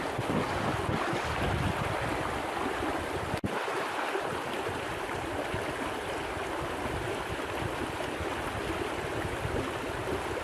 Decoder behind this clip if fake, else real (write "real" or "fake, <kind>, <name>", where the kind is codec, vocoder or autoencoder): real